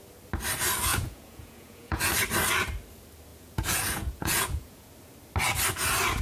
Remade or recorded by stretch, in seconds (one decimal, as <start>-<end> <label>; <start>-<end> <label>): 0.0-0.9 recorded; 0.9-2.0 remade; 2.0-3.3 recorded; 3.3-4.9 remade; 4.9-6.2 recorded